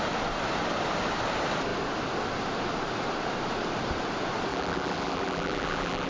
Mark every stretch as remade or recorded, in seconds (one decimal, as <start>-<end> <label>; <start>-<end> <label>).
0.0-4.5 recorded; 4.5-6.1 remade